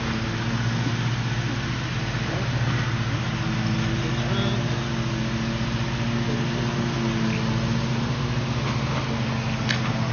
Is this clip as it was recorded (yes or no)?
yes